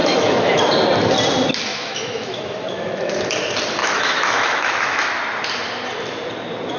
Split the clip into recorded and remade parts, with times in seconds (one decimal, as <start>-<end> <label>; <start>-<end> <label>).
0.0-0.6 remade; 0.6-1.7 recorded; 1.7-3.2 remade; 3.2-3.8 recorded; 3.8-5.1 remade; 5.1-6.8 recorded